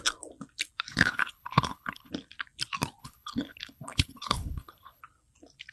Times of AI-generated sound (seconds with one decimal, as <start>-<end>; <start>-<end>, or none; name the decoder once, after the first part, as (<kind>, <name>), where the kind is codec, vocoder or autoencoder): 0.9-2.1 (codec, HILCodec); 3.0-5.0

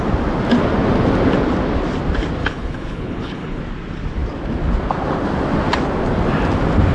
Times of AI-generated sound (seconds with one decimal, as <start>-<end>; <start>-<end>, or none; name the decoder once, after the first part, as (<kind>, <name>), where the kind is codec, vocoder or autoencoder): 2.4-3.6 (codec, HILCodec)

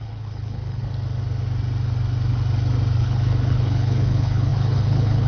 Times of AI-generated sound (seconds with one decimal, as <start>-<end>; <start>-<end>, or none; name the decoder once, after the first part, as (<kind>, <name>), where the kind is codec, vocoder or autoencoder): 0.0-0.8 (codec, HILCodec); 3.0-5.3